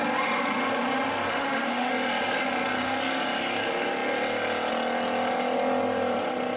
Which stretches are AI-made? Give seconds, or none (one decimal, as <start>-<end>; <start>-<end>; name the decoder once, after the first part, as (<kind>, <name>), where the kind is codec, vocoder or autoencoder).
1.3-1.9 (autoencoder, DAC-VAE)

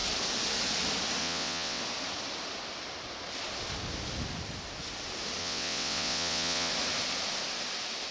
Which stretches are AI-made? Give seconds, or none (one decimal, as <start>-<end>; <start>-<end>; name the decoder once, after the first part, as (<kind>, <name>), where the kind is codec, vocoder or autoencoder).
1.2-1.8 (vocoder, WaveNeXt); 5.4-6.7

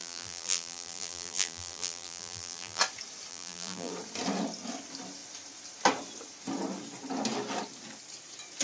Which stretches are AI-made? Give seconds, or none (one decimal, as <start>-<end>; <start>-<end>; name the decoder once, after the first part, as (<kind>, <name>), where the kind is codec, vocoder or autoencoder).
0.0-2.8 (vocoder, BigVGAN v2); 3.3-3.9

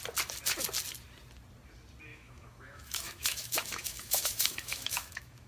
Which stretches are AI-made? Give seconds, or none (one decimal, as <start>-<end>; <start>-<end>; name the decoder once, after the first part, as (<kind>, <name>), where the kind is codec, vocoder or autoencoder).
2.1-5.5 (autoencoder, DAC-VAE)